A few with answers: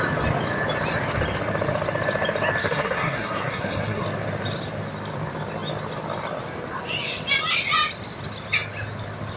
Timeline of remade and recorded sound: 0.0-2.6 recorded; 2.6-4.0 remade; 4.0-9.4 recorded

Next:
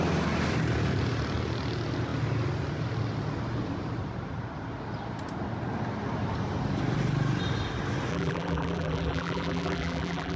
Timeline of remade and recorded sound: 0.0-8.1 recorded; 8.1-10.4 remade

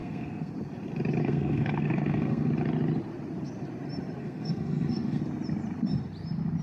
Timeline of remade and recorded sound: 0.0-0.5 remade; 0.5-1.2 recorded; 1.2-2.5 remade; 2.5-4.2 recorded; 4.2-5.2 remade; 5.2-6.6 recorded

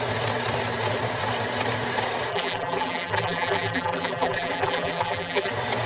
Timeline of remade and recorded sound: 0.0-2.3 recorded; 2.3-5.5 remade; 5.5-5.9 recorded

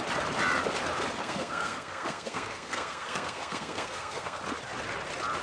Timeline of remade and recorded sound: 0.0-1.2 recorded; 1.2-4.4 remade; 4.4-5.4 recorded

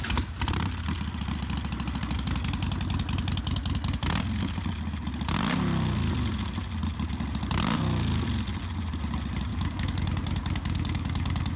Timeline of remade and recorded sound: 0.0-9.5 recorded; 9.5-11.6 remade

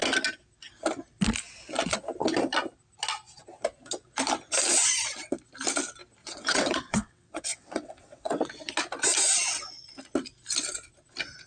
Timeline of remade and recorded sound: 0.0-6.2 recorded; 6.2-8.7 remade; 8.7-11.5 recorded